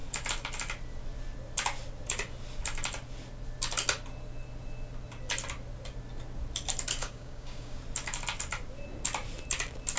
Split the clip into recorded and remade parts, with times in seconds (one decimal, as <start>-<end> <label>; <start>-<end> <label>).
0.0-7.0 recorded; 7.0-7.8 remade; 7.8-10.0 recorded